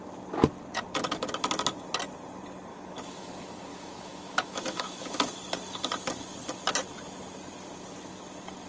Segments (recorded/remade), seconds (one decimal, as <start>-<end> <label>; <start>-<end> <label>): 0.0-2.7 recorded; 2.7-3.3 remade; 3.3-3.7 recorded; 3.7-5.1 remade; 5.1-8.7 recorded